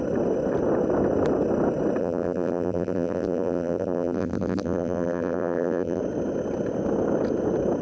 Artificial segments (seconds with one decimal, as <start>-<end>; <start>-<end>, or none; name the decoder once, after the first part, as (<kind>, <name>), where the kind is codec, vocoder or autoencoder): 2.0-6.0 (vocoder, BigVGAN v2)